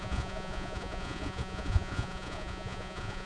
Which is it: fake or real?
fake